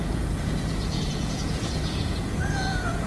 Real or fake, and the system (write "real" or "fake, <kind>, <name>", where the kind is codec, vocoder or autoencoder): fake, vocoder, Vocos